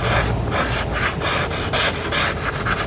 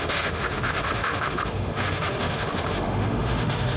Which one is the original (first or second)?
first